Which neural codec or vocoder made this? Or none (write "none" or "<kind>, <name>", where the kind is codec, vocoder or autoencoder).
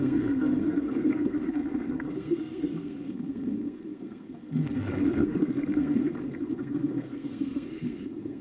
codec, SNAC